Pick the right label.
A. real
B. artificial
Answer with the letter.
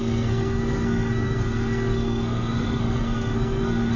B